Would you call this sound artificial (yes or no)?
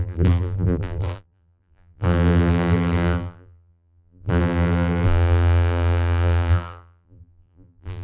yes